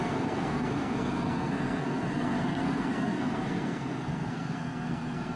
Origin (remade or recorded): remade